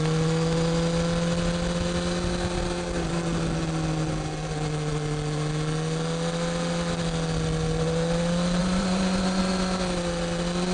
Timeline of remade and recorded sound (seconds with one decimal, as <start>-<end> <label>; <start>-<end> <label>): 0.0-8.6 recorded; 8.6-9.4 remade; 9.4-10.7 recorded